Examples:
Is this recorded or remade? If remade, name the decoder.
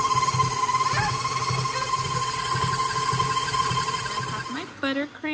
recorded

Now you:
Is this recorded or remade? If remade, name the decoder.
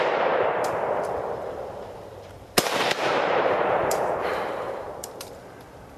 remade, vocoder, BigVGAN v2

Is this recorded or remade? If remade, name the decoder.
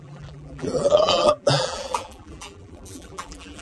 remade, vocoder, BigVGAN v2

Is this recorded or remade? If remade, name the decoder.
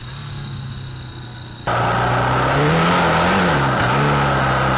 recorded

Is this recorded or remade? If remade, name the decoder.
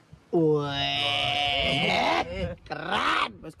recorded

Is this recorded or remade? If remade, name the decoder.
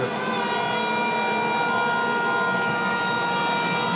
recorded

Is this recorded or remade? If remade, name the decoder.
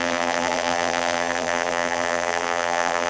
remade, vocoder, BigVGAN v2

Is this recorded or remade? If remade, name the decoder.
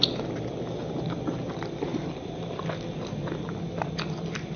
recorded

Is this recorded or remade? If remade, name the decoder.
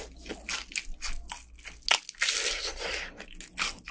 recorded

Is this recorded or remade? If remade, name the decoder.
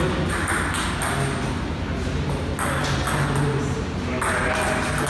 recorded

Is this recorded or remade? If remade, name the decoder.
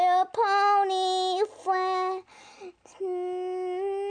recorded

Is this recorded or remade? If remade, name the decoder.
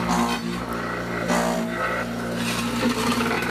recorded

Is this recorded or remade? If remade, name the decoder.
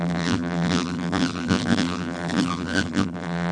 remade, vocoder, BigVGAN v2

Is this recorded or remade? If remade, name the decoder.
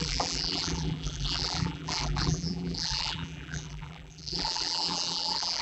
remade, vocoder, BigVGAN v2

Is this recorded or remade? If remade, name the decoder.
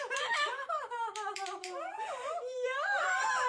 remade, vocoder, BigVGAN v2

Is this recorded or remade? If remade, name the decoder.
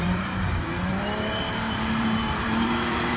remade, vocoder, BigVGAN v2